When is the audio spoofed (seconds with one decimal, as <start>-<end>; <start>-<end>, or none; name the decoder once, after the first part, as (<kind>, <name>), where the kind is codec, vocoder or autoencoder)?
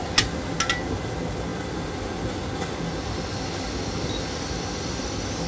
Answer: none